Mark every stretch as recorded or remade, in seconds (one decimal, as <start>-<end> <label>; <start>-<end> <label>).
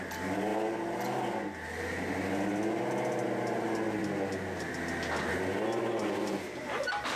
0.0-7.2 recorded